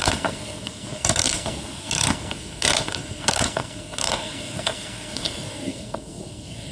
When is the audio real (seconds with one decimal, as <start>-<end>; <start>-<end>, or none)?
none